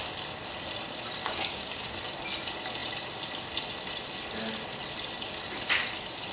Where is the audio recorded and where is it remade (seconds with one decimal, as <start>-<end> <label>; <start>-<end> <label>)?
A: 0.0-1.2 recorded; 1.2-2.0 remade; 2.0-6.3 recorded